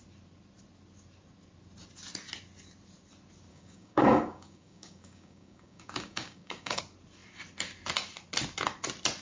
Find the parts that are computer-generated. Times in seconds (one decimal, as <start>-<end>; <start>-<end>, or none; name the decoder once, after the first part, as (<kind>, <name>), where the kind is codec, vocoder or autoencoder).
3.5-6.8 (codec, DAC)